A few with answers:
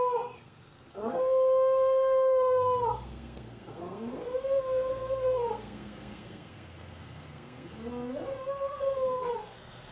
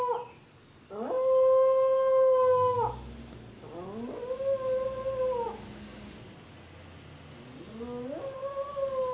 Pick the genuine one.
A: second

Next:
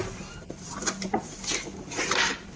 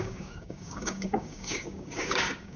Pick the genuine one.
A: first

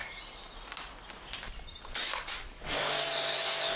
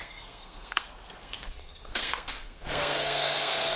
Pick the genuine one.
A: first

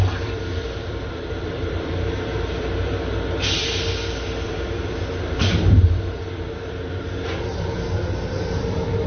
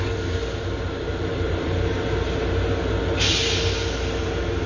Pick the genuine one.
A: second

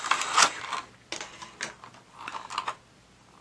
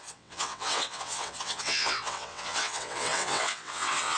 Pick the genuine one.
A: first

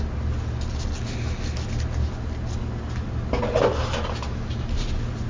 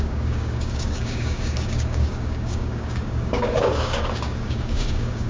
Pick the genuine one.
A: first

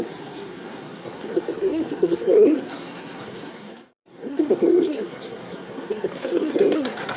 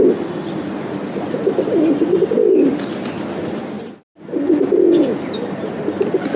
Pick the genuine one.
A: second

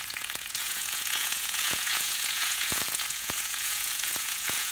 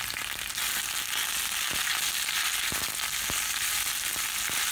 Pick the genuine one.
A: second